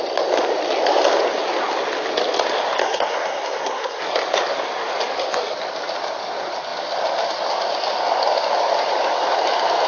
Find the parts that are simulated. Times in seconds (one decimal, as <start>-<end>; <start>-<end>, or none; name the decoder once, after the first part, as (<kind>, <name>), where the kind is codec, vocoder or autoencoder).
2.8-4.0 (codec, SNAC)